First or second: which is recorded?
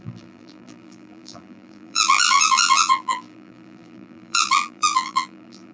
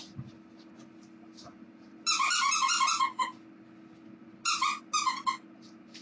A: second